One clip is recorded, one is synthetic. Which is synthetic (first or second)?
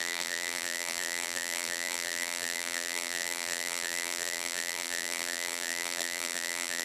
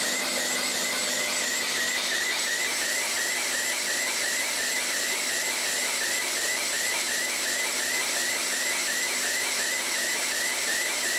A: first